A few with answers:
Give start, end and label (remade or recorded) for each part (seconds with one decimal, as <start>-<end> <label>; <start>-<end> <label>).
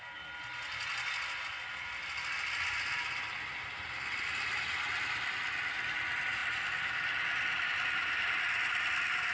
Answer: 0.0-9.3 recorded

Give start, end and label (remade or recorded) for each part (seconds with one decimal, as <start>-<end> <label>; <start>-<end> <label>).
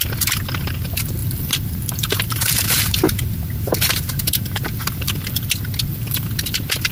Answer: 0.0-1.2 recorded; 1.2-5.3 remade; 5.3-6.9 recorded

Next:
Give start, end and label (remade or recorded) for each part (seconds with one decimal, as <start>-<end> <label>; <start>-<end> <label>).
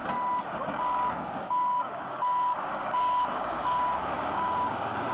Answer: 0.0-0.7 recorded; 0.7-5.1 remade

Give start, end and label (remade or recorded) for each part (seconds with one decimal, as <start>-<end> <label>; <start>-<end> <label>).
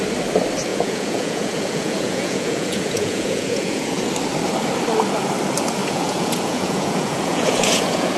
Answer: 0.0-0.7 recorded; 0.7-4.0 remade; 4.0-5.8 recorded; 5.8-8.2 remade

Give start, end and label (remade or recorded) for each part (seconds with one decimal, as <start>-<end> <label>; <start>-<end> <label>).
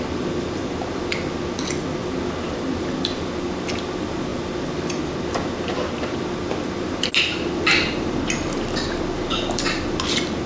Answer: 0.0-10.5 recorded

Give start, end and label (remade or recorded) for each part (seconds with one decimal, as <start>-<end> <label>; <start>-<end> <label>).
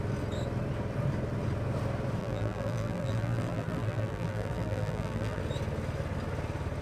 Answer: 0.0-2.2 recorded; 2.2-5.4 remade; 5.4-6.8 recorded